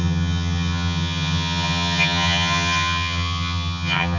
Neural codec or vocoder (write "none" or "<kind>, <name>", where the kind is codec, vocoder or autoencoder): vocoder, HiFi-GAN